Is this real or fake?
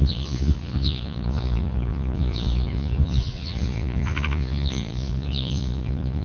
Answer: fake